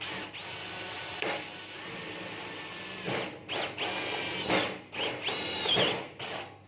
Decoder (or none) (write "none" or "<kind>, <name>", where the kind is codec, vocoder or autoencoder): none